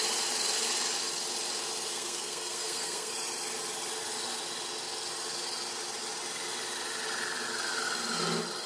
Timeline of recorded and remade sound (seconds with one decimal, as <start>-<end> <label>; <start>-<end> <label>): 0.0-1.9 recorded; 1.9-3.1 remade; 3.1-8.7 recorded